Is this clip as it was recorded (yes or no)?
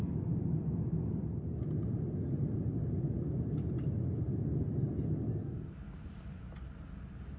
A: yes